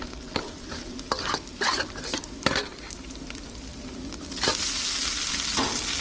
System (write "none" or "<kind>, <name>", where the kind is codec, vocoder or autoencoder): none